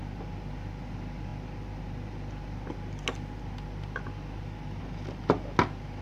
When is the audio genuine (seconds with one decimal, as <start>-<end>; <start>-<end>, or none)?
0.0-6.0